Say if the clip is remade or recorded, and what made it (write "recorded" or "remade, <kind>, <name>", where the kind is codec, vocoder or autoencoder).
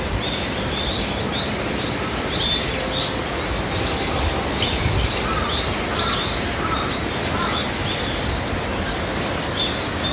recorded